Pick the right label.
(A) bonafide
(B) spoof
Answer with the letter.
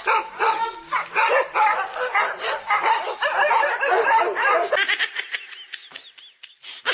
A